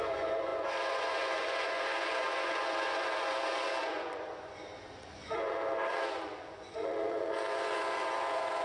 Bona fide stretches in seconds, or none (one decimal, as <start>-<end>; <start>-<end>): none